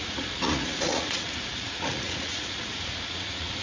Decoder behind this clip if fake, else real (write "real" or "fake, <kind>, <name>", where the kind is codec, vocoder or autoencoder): fake, vocoder, Vocos